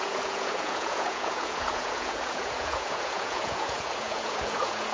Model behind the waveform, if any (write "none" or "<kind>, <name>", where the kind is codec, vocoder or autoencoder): vocoder, Vocos